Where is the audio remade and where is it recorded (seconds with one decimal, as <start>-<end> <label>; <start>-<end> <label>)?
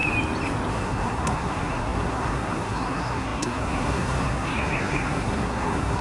0.0-0.7 recorded; 0.7-6.0 remade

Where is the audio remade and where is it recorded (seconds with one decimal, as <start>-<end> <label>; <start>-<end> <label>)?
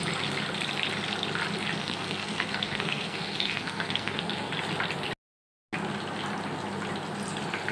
0.0-1.8 recorded; 1.8-4.5 remade; 4.5-7.7 recorded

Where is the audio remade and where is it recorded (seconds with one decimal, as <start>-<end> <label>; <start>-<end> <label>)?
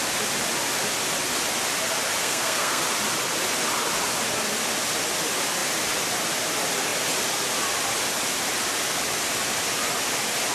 0.0-2.2 recorded; 2.2-2.8 remade; 2.8-10.5 recorded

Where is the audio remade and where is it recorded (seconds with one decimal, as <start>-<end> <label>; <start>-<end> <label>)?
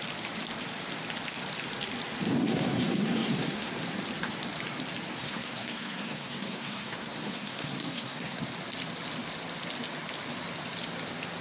0.0-2.4 recorded; 2.4-3.7 remade; 3.7-5.2 recorded; 5.2-8.4 remade; 8.4-11.4 recorded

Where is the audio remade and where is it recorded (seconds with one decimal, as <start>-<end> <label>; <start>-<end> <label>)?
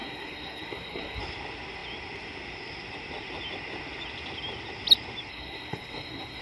0.0-1.2 remade; 1.2-5.3 recorded; 5.3-6.4 remade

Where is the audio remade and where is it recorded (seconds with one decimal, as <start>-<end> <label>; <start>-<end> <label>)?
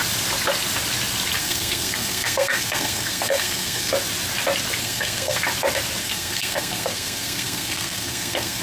0.0-1.4 recorded; 1.4-3.9 remade; 3.9-4.8 recorded; 4.8-5.4 remade; 5.4-6.0 recorded; 6.0-8.6 remade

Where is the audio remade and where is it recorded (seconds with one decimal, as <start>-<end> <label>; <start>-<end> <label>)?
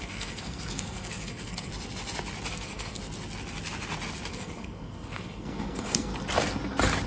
0.0-1.7 remade; 1.7-2.5 recorded; 2.5-3.0 remade; 3.0-4.3 recorded; 4.3-6.1 remade; 6.1-7.1 recorded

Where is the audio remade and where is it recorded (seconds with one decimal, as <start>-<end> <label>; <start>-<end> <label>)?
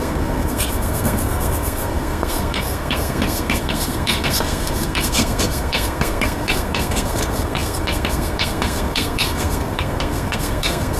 0.0-11.0 remade